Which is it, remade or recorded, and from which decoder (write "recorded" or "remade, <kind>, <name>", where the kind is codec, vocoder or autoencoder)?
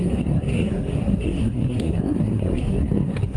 remade, codec, SNAC